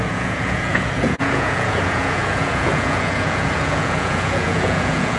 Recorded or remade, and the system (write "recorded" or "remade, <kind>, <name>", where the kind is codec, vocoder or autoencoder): remade, vocoder, Vocos